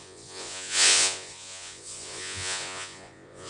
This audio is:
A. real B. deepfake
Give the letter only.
B